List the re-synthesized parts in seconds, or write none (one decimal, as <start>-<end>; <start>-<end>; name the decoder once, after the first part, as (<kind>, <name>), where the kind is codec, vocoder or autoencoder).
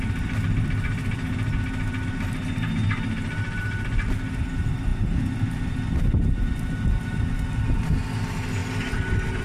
none